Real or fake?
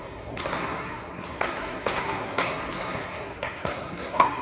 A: fake